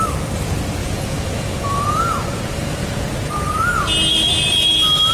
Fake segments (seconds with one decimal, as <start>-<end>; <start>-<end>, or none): 0.8-3.9